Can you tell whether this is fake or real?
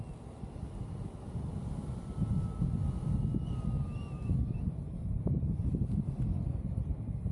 real